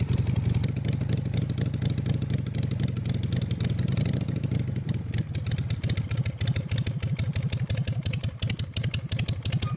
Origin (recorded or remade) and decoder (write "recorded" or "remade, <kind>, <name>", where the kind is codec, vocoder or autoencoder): recorded